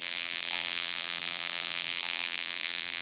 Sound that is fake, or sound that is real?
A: fake